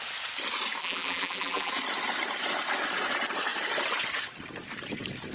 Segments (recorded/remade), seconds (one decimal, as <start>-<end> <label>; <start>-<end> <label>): 0.0-0.8 recorded; 0.8-1.7 remade; 1.7-5.3 recorded